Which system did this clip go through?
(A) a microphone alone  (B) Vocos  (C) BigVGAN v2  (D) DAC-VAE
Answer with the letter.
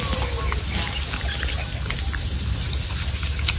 A